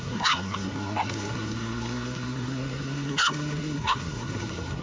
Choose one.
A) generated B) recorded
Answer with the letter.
A